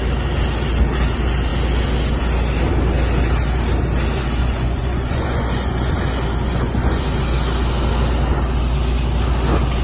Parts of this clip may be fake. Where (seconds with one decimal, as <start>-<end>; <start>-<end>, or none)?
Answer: 4.4-5.9; 6.5-7.0